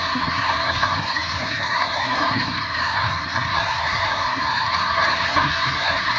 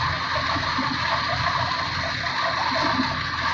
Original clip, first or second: second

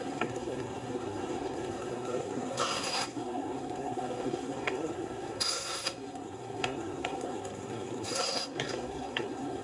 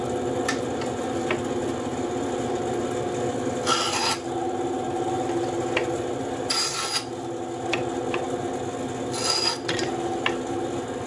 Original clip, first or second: second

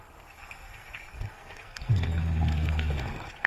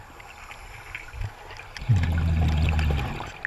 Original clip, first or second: second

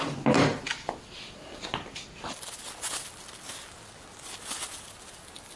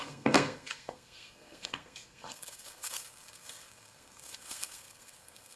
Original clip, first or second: first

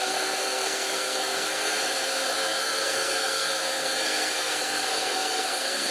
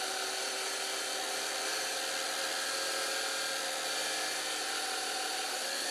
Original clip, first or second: second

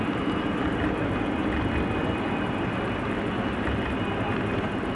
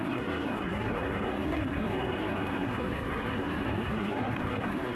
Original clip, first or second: first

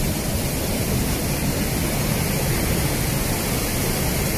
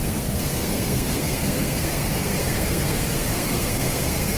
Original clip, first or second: first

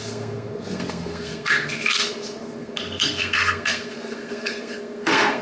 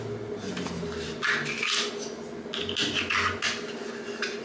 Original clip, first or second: second